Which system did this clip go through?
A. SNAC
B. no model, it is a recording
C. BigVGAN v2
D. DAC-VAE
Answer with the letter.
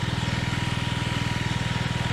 B